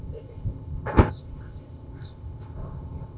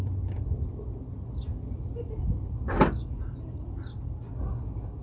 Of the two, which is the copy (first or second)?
first